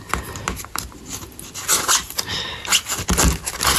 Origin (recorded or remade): recorded